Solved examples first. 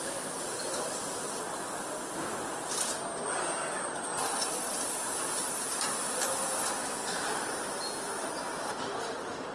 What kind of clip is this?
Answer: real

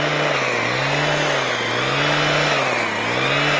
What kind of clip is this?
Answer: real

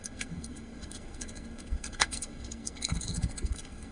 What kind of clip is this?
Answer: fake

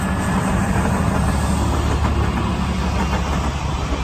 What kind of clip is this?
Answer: real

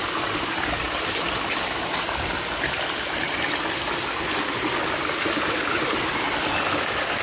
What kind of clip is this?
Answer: real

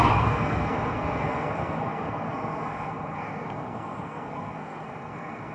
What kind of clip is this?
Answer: fake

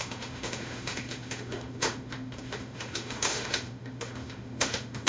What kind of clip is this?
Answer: fake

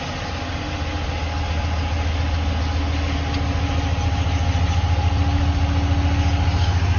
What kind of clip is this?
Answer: real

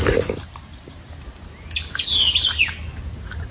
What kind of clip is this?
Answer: real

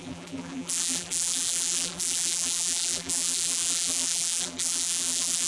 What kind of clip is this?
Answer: fake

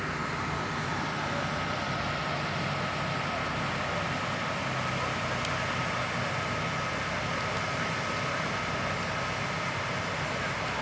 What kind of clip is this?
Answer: real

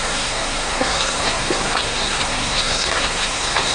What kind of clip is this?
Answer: fake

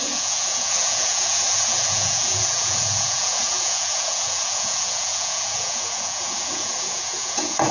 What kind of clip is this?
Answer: fake